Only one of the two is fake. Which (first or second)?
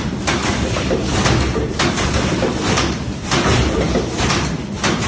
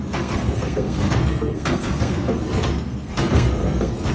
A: second